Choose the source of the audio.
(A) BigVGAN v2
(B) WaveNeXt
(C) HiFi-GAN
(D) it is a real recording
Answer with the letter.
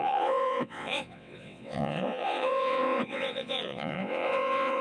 B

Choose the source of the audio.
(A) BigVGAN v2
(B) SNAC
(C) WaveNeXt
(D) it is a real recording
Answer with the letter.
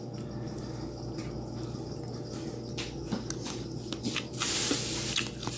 D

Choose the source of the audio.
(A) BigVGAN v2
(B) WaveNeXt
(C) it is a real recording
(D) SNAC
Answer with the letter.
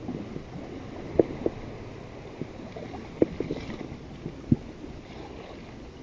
C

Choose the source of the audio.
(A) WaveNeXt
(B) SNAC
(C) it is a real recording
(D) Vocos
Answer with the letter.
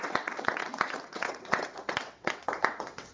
A